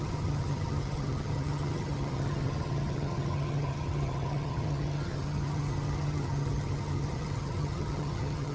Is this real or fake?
fake